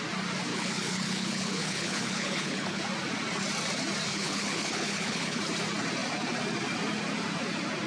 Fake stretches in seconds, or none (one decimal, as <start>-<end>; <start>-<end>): 0.5-2.8; 4.1-5.4